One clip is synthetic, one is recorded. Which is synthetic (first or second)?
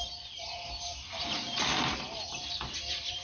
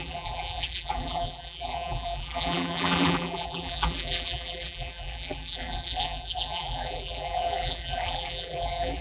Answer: second